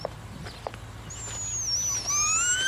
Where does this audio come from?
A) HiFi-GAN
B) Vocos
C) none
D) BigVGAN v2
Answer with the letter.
C